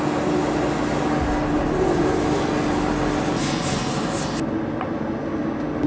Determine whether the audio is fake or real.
real